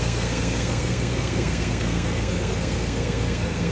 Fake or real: fake